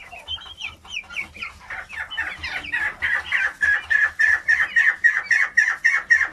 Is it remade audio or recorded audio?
recorded